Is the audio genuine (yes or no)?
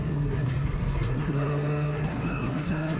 no